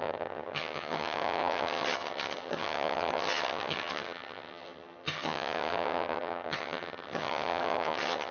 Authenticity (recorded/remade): remade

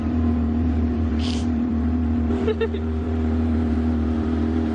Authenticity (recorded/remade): remade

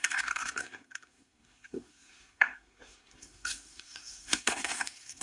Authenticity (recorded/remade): remade